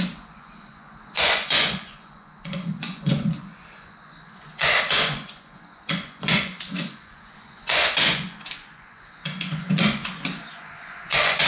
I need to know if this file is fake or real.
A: fake